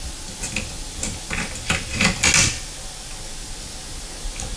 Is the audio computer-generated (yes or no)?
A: no